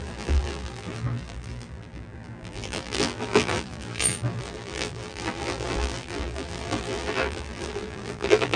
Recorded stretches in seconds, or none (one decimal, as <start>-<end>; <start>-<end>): none